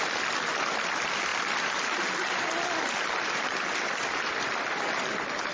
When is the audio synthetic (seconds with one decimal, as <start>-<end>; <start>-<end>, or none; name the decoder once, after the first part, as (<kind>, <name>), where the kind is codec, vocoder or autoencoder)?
none